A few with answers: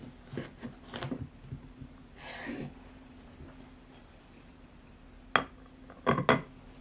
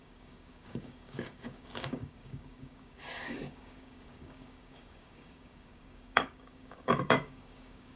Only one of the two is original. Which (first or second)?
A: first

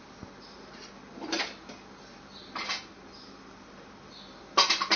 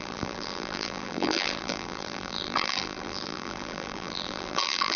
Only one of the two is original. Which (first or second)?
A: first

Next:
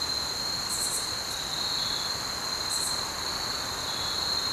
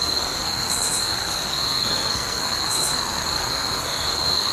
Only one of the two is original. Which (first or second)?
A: first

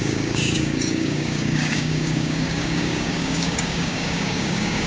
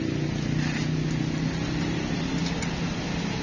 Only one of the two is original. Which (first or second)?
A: second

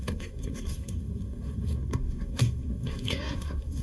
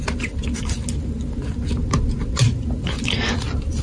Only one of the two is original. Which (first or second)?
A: second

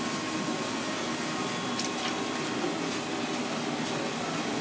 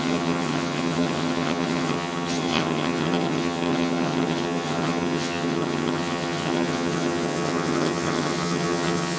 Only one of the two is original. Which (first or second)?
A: first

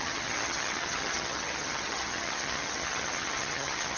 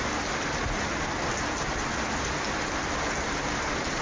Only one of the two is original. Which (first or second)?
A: second